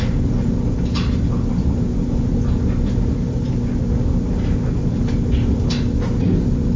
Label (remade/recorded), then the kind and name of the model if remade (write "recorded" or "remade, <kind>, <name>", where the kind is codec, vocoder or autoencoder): recorded